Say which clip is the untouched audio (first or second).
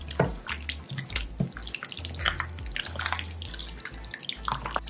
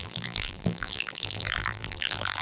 first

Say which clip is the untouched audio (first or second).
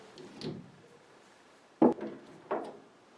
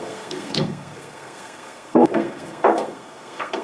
first